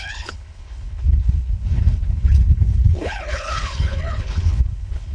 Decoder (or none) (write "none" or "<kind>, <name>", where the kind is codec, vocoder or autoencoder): codec, HILCodec